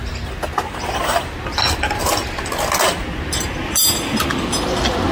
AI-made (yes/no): no